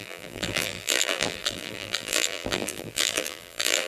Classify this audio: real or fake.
fake